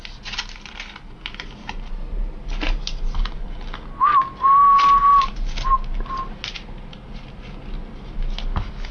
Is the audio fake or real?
real